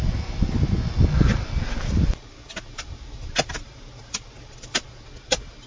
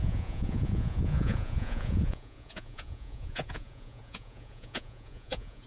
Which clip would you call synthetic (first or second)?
second